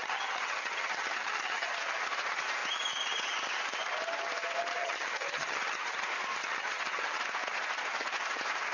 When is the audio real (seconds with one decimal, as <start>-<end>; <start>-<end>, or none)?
1.7-4.8; 6.0-6.4; 7.2-8.7